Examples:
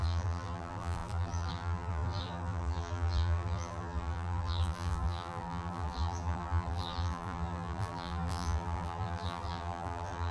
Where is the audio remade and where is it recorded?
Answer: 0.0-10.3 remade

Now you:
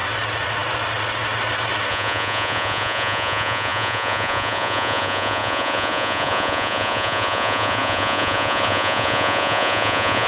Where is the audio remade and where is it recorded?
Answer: 0.0-1.9 recorded; 1.9-10.3 remade

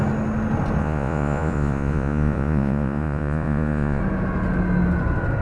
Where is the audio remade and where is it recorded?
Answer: 0.0-0.8 recorded; 0.8-4.0 remade; 4.0-5.4 recorded

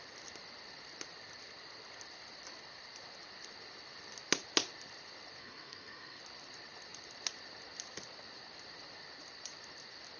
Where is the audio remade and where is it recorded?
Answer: 0.0-5.4 recorded; 5.4-6.2 remade; 6.2-10.2 recorded